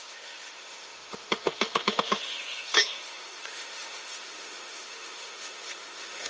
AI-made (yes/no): yes